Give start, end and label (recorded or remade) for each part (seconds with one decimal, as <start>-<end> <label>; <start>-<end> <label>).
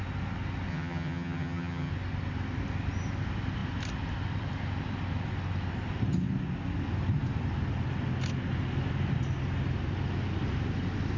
0.0-0.7 recorded; 0.7-1.9 remade; 1.9-11.2 recorded